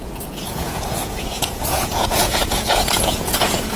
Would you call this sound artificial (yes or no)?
yes